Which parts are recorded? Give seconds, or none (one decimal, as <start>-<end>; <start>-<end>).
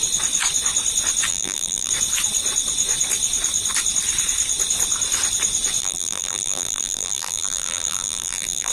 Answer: 0.0-1.3; 1.9-5.8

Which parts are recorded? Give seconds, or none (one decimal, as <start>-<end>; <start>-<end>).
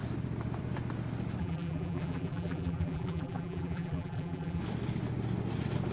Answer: 0.0-1.4; 4.6-5.9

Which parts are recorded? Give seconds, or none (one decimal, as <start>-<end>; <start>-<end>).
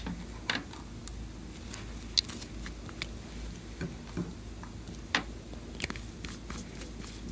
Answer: 0.0-7.3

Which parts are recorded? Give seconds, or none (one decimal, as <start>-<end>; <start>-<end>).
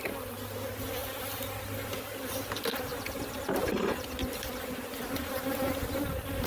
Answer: 0.0-2.9; 6.0-6.5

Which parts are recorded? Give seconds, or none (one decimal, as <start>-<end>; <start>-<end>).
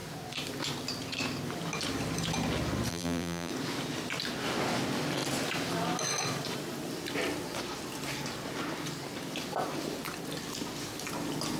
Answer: 0.0-2.9; 3.5-11.6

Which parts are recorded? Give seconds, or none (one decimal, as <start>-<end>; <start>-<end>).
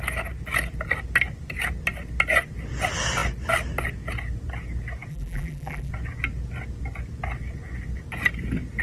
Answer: 0.0-5.1; 5.9-8.8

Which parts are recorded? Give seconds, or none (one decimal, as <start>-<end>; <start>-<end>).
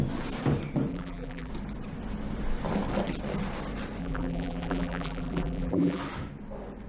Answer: 0.0-0.9; 1.5-4.0; 6.0-6.9